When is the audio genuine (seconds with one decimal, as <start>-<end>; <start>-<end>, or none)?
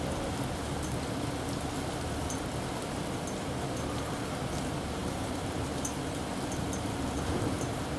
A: 0.0-5.0; 6.0-8.0